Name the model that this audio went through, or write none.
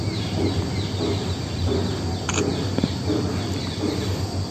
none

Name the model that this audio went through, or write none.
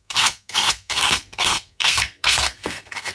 codec, SNAC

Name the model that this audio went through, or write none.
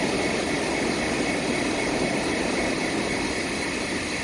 none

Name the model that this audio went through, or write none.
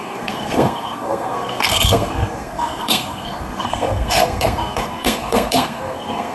codec, SNAC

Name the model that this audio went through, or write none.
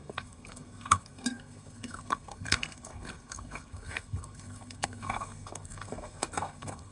codec, SNAC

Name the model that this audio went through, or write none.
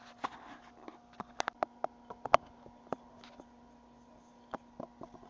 none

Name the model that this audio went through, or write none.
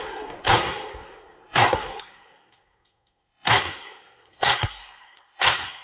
codec, SNAC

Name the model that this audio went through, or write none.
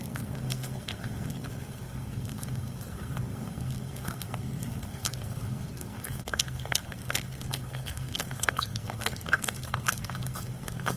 codec, SNAC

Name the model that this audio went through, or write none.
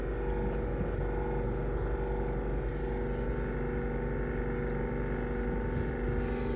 none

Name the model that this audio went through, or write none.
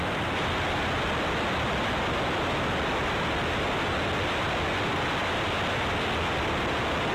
none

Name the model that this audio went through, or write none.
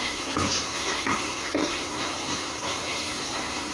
codec, SNAC